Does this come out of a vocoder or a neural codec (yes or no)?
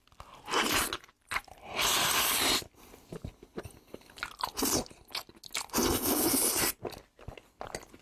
no